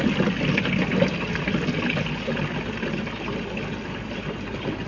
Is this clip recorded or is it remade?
recorded